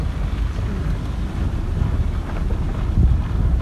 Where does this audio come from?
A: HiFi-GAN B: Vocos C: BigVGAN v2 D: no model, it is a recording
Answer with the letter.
D